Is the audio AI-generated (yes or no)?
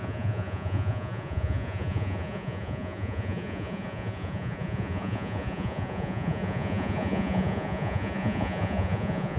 yes